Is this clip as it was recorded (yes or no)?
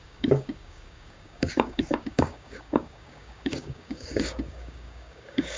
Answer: no